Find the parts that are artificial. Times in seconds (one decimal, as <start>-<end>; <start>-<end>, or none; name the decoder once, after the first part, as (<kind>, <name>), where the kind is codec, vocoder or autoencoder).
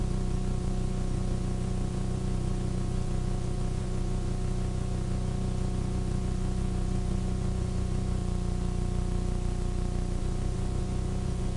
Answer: 0.0-8.2 (vocoder, Vocos); 10.2-11.6